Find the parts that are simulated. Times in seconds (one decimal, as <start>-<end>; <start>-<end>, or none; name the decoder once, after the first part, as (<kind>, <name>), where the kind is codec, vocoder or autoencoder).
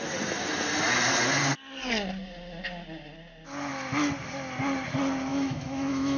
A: 5.3-6.2 (autoencoder, DAC-VAE)